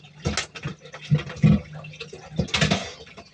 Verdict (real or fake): real